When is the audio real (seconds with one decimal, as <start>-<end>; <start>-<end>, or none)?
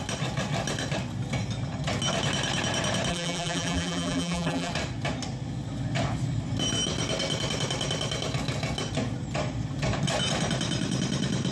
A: 0.0-3.1; 4.7-11.5